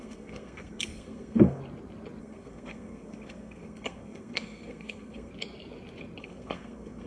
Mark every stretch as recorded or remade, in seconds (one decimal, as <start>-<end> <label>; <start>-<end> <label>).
0.0-1.6 remade; 1.6-2.2 recorded; 2.2-5.3 remade; 5.3-6.2 recorded; 6.2-7.1 remade